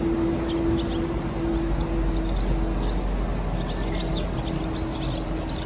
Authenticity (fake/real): real